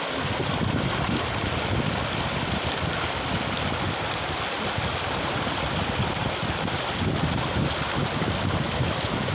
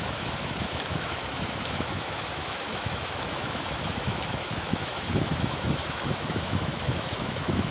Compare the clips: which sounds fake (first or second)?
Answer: second